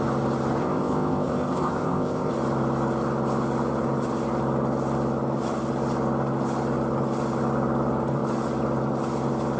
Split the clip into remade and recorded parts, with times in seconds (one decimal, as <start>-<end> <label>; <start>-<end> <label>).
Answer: 0.0-0.6 recorded; 0.6-2.3 remade; 2.3-9.6 recorded